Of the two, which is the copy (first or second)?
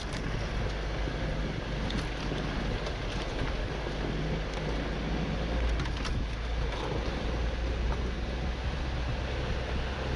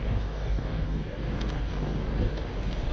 second